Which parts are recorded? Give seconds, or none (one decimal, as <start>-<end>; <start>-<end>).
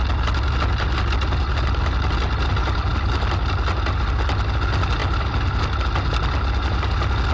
0.0-7.3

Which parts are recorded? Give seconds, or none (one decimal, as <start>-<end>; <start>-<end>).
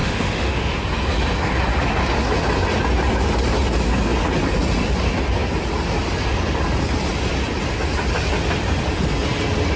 0.7-9.8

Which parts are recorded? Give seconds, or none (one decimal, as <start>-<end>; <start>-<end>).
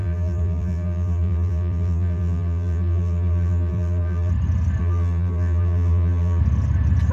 4.3-4.8; 6.4-7.1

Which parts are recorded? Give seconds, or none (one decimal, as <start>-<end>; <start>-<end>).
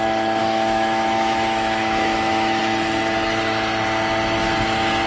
0.0-0.4; 2.6-5.1